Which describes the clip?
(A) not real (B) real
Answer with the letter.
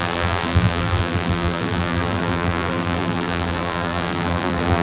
A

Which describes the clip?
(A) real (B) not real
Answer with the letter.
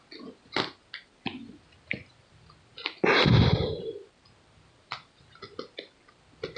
A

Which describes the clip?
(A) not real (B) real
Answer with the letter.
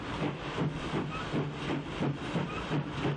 B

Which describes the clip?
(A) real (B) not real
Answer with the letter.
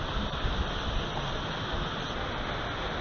A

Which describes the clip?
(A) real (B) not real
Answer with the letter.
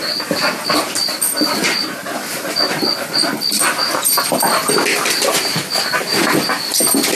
B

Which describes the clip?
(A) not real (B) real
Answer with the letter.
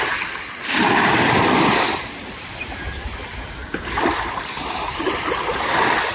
A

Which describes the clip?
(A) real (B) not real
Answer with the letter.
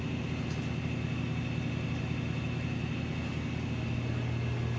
A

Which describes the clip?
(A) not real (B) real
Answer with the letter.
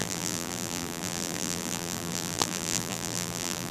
A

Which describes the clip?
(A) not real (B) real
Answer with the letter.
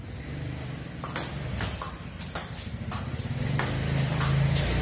B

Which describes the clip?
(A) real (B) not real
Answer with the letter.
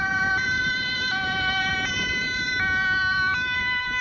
B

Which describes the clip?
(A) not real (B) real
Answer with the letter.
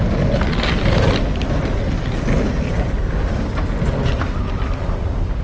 B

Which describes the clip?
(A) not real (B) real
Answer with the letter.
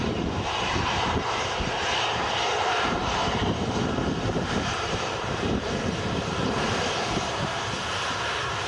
A